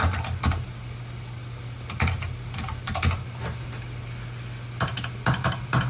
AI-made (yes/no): no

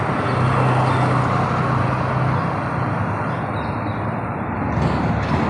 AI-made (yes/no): no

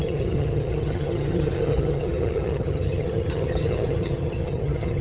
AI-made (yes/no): yes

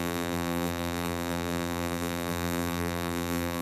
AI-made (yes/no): yes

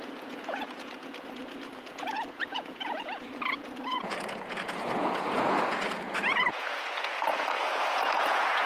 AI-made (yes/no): yes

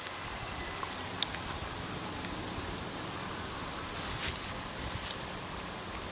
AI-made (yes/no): no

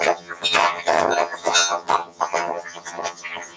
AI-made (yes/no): yes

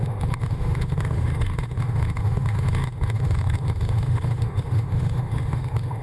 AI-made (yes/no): yes